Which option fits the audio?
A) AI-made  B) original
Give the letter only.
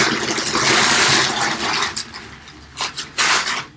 B